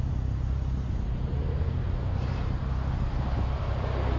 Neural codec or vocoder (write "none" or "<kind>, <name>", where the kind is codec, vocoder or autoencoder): none